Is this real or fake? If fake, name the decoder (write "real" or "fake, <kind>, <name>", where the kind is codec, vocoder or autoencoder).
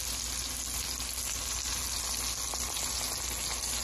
real